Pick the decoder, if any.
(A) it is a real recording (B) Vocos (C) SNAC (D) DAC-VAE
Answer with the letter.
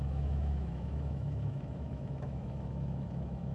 D